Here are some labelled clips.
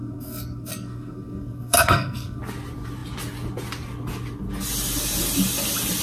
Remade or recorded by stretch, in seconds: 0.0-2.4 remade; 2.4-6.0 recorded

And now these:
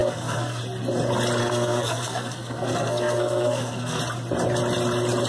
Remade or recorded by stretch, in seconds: 0.0-0.6 remade; 0.6-1.4 recorded; 1.4-4.0 remade; 4.0-5.3 recorded